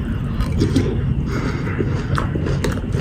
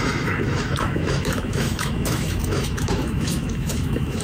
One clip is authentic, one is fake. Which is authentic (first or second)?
first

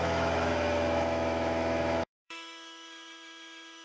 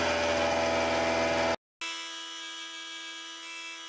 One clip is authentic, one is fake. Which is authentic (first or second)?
second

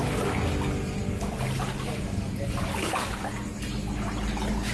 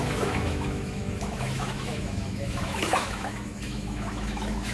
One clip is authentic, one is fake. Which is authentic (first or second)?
first